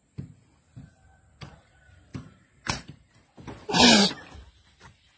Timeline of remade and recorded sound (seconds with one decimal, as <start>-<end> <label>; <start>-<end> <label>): 0.0-2.1 recorded; 2.1-3.2 remade; 3.2-5.2 recorded